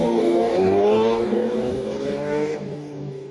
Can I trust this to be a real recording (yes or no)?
no